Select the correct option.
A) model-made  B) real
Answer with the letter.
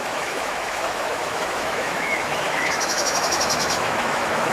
A